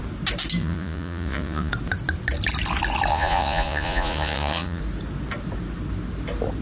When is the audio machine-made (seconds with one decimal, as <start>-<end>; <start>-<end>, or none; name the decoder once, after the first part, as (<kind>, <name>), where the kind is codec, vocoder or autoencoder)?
0.6-1.7 (vocoder, Vocos); 3.1-4.8